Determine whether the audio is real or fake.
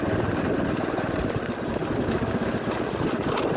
real